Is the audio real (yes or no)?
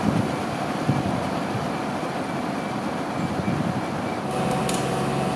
yes